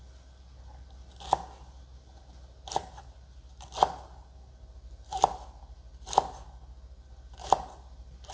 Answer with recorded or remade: recorded